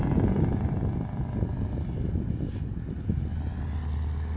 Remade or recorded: recorded